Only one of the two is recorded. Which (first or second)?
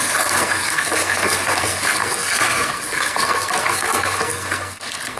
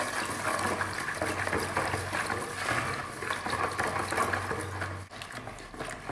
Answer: second